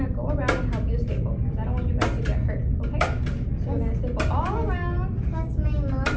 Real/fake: real